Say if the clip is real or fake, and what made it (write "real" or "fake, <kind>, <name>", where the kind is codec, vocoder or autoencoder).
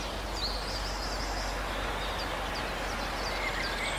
real